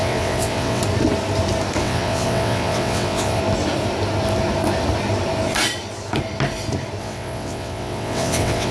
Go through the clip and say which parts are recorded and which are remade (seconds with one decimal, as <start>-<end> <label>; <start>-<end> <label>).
0.0-0.8 remade; 0.8-1.8 recorded; 1.8-3.4 remade; 3.4-7.0 recorded; 7.0-8.7 remade

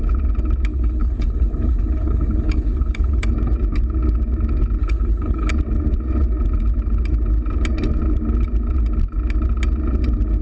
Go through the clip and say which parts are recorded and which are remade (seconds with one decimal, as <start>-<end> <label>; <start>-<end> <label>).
0.0-0.7 recorded; 0.7-3.3 remade; 3.3-4.8 recorded; 4.8-5.5 remade; 5.5-10.4 recorded